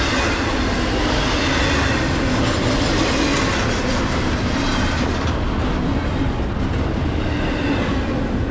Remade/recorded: recorded